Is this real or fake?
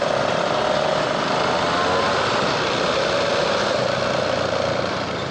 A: real